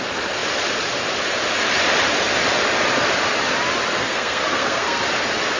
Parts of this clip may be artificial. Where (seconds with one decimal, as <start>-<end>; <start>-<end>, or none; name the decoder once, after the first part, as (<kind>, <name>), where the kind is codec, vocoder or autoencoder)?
4.0-5.0 (codec, SNAC)